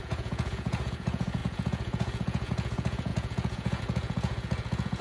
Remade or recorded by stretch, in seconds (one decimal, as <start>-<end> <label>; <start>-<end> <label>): 0.0-5.0 remade